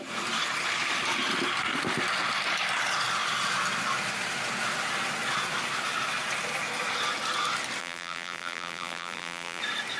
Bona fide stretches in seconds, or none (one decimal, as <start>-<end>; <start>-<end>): 0.0-7.8; 9.6-10.0